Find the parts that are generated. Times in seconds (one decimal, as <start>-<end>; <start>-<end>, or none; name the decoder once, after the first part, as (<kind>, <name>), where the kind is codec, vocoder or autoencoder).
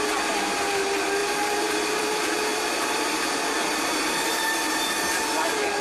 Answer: 1.2-2.1 (vocoder, BigVGAN v2); 2.5-5.1